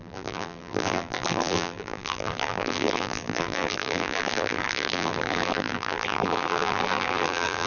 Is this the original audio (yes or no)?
no